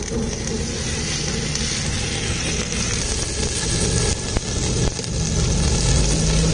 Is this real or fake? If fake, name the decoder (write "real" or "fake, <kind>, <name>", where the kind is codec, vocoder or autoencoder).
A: real